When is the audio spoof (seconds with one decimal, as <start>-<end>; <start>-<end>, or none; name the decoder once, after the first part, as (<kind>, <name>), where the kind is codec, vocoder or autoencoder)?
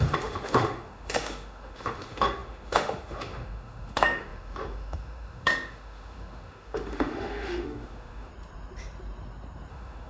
0.0-8.3 (autoencoder, DAC-VAE); 9.7-10.1